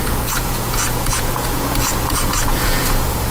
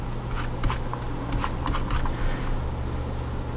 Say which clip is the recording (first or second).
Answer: second